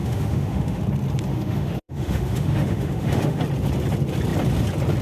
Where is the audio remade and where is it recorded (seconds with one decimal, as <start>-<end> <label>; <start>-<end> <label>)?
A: 0.0-0.8 remade; 0.8-1.3 recorded; 1.3-3.4 remade; 3.4-5.0 recorded